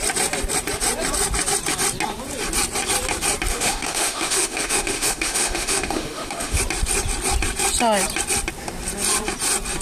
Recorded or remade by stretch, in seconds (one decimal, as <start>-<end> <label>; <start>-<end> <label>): 0.0-3.5 recorded; 3.5-6.6 remade; 6.6-9.8 recorded